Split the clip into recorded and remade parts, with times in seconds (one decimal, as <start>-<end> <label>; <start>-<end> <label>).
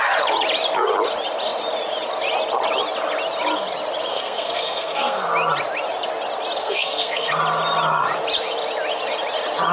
0.0-4.1 recorded; 4.1-5.3 remade; 5.3-6.6 recorded; 6.6-7.3 remade; 7.3-9.7 recorded